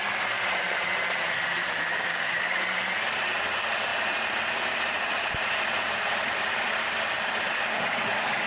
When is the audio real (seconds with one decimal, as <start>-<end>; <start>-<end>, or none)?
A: 0.0-1.6; 2.6-8.5